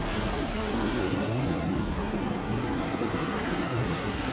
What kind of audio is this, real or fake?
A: fake